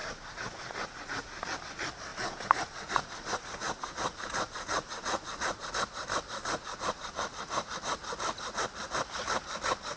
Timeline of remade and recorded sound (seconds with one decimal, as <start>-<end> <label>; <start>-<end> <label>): 0.0-1.6 remade; 1.6-2.1 recorded; 2.1-5.7 remade; 5.7-6.4 recorded; 6.4-7.1 remade; 7.1-10.0 recorded